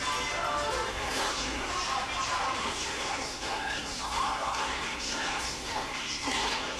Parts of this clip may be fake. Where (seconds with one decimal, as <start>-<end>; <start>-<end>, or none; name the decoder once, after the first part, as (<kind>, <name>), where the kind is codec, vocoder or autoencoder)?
0.9-1.7 (codec, SNAC); 2.6-6.8